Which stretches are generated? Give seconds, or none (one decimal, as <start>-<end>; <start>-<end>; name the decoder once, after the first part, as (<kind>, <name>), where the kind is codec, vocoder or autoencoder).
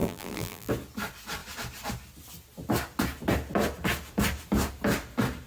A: 0.0-0.7 (vocoder, BigVGAN v2)